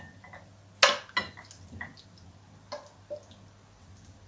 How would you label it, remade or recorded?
recorded